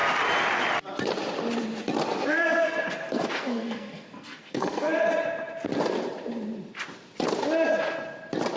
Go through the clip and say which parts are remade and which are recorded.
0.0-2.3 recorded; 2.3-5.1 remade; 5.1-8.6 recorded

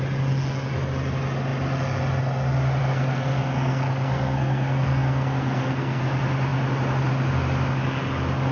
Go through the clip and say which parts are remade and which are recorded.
0.0-2.8 recorded; 2.8-6.0 remade; 6.0-8.5 recorded

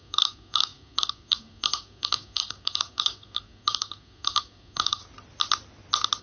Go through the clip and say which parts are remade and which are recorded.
0.0-5.0 remade; 5.0-6.2 recorded

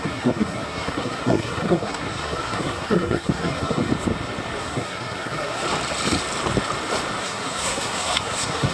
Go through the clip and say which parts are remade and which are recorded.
0.0-3.9 remade; 3.9-4.6 recorded; 4.6-5.6 remade; 5.6-7.2 recorded; 7.2-8.7 remade